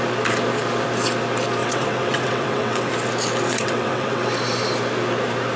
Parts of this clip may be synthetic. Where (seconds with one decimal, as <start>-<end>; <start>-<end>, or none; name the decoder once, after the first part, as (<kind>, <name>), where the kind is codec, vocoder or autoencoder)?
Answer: 1.6-2.9 (vocoder, WaveNeXt); 3.5-4.3